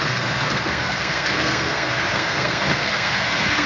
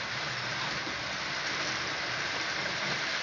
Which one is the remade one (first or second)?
first